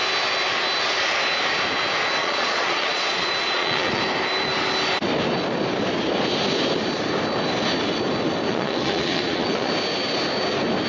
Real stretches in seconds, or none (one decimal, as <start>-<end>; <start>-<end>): 0.0-2.2; 4.0-8.5; 9.7-10.9